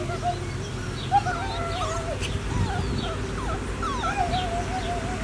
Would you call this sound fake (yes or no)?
no